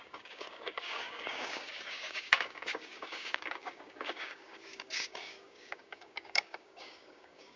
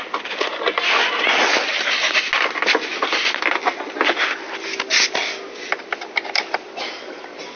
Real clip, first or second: second